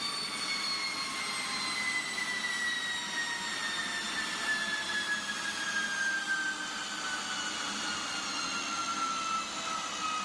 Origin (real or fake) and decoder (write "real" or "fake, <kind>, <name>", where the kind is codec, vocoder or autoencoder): real